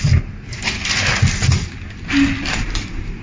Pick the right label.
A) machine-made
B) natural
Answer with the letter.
B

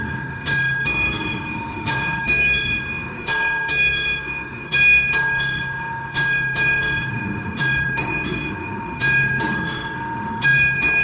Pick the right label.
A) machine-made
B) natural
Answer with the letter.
A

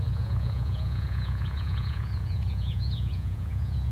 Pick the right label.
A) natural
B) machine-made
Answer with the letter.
B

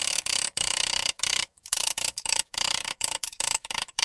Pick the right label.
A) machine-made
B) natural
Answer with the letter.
A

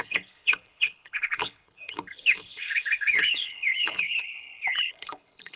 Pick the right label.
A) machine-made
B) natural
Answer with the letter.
A